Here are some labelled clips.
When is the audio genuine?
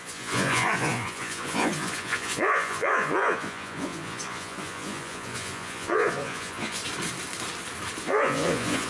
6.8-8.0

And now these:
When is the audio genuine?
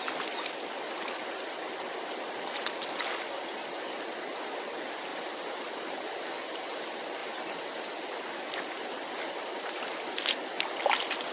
0.0-5.1; 6.8-11.3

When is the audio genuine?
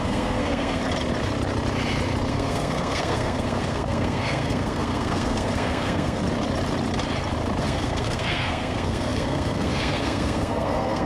0.8-2.3; 6.2-7.6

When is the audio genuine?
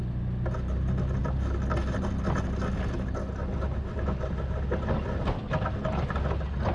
0.0-6.7